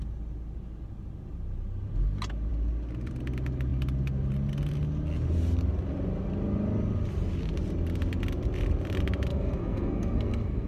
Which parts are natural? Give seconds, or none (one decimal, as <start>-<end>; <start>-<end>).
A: 0.0-9.3